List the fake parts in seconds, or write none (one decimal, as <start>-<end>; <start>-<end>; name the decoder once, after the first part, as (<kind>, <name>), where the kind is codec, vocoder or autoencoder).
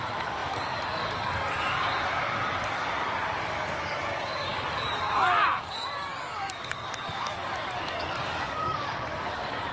0.0-2.9 (codec, DAC); 3.4-9.7